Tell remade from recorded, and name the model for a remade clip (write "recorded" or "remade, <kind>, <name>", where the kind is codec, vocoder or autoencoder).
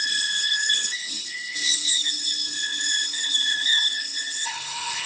remade, codec, HILCodec